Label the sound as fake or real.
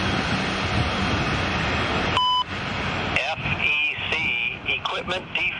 real